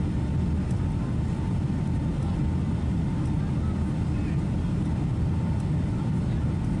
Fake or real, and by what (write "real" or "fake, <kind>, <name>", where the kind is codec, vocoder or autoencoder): real